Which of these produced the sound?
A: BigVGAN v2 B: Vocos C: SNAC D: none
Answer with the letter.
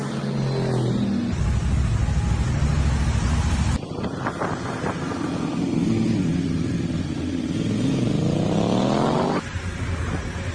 D